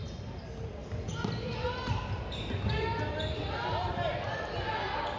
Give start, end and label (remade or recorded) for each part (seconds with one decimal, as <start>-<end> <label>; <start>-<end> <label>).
0.0-5.2 recorded